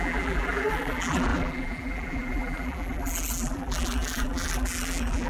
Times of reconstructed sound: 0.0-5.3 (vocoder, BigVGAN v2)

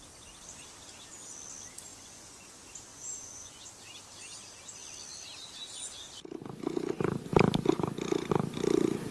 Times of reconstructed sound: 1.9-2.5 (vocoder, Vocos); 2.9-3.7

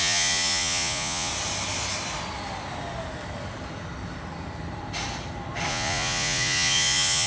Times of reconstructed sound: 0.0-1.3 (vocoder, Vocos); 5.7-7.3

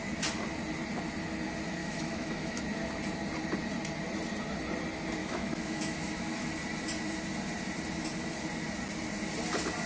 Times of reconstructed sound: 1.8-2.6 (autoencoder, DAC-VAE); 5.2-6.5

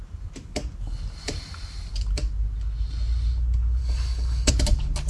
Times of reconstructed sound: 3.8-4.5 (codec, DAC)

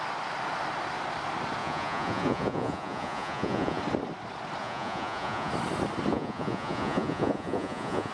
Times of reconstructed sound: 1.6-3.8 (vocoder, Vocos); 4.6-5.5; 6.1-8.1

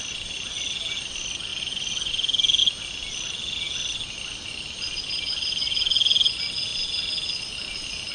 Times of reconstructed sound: none